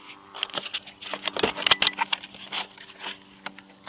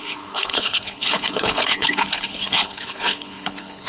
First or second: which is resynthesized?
second